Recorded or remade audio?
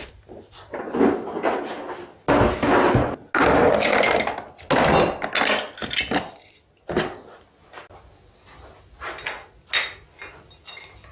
recorded